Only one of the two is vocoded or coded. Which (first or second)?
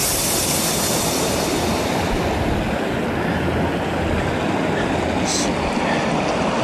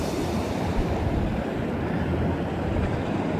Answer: second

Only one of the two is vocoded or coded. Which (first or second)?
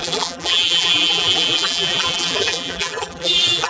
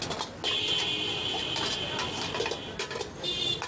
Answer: first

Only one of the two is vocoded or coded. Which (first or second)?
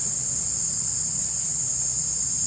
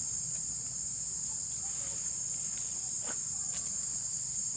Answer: second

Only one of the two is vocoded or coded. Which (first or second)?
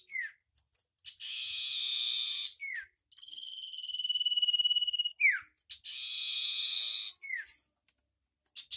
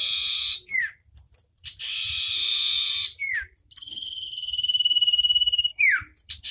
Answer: second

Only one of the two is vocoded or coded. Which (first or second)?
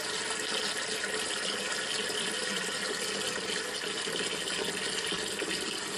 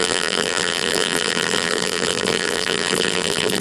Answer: second